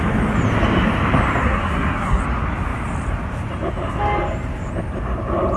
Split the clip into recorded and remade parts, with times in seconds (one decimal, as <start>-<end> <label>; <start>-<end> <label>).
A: 0.0-1.4 recorded; 1.4-2.2 remade; 2.2-5.6 recorded